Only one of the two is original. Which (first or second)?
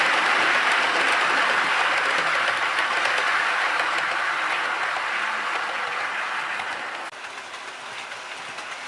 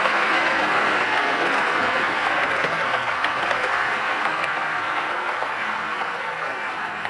first